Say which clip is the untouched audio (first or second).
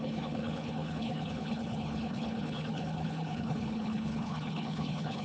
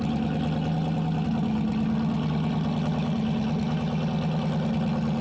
second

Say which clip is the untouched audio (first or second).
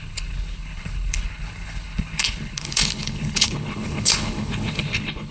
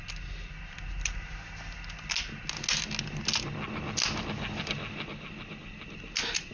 second